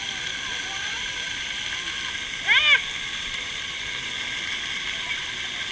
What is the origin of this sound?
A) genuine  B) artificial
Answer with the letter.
A